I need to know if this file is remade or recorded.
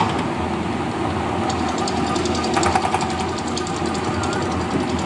recorded